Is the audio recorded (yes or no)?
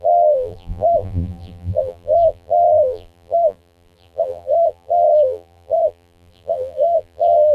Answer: no